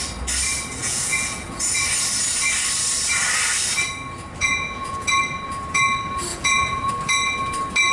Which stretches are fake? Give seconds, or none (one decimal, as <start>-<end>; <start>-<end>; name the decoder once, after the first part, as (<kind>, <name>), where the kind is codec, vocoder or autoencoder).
0.8-1.6 (vocoder, Vocos); 4.4-5.1; 6.3-6.9